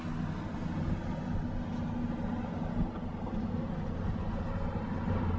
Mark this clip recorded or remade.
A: recorded